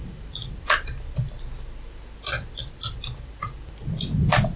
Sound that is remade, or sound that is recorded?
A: recorded